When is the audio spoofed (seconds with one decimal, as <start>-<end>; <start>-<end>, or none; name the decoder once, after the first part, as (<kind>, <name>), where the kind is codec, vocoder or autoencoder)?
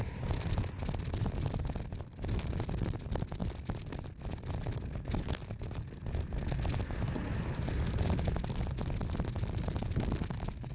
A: none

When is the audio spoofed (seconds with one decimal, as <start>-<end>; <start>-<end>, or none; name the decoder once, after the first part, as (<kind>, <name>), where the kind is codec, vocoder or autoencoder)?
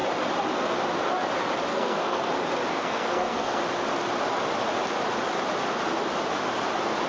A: 1.7-2.3 (codec, SNAC); 2.7-3.6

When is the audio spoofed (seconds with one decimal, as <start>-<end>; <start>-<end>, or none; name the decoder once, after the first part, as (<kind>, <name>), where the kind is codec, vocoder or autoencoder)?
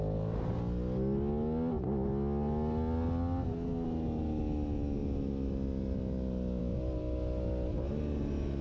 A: none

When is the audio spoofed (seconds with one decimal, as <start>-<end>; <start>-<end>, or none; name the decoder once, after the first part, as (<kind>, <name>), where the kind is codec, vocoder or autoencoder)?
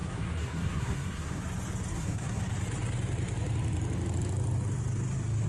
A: 0.0-1.4 (codec, SNAC); 1.9-2.4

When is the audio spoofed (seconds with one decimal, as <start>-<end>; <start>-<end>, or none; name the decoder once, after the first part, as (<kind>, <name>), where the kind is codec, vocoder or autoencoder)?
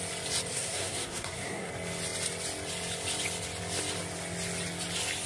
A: 0.5-1.7 (codec, SNAC)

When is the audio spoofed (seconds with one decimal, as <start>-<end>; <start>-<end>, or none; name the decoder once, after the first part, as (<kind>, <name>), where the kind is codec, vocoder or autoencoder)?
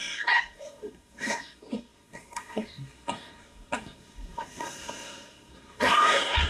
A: 0.0-6.5 (codec, SNAC)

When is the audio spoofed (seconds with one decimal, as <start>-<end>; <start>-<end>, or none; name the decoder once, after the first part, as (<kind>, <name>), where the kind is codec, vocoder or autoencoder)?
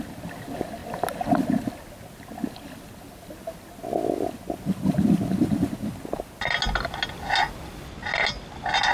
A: none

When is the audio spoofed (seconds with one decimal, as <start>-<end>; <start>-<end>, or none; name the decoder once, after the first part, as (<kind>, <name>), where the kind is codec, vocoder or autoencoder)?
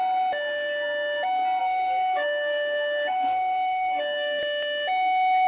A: 1.6-4.4 (codec, SNAC)